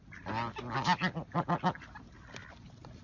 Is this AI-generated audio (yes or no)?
no